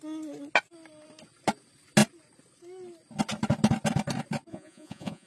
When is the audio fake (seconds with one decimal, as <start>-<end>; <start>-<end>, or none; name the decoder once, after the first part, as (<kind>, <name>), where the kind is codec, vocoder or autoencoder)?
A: 4.5-5.3 (vocoder, Vocos)